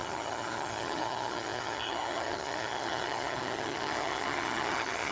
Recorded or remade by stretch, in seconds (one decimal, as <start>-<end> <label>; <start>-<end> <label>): 0.0-5.1 remade